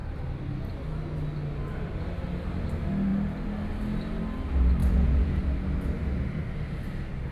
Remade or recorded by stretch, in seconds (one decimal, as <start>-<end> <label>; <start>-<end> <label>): 0.0-4.8 recorded; 4.8-5.4 remade; 5.4-7.3 recorded